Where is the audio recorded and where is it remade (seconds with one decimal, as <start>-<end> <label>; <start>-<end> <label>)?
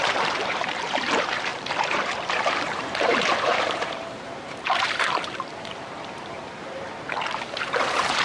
0.0-8.2 remade